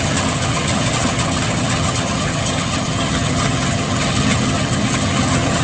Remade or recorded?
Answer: remade